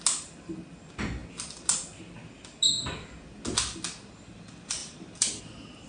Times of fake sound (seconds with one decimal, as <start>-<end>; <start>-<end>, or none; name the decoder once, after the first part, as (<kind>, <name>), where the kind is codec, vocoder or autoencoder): none